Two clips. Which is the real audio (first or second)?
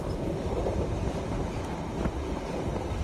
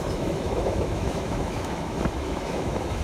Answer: first